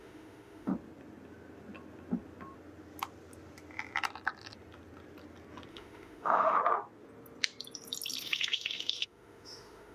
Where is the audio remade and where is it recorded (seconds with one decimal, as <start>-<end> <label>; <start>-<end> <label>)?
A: 0.0-0.7 remade; 0.7-5.7 recorded; 5.7-6.6 remade; 6.6-8.2 recorded; 8.2-9.9 remade